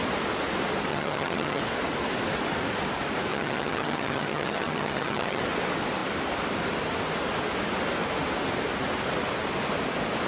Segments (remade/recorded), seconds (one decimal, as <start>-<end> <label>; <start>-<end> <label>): 0.0-0.9 recorded; 0.9-1.6 remade; 1.6-3.3 recorded; 3.3-5.4 remade; 5.4-10.3 recorded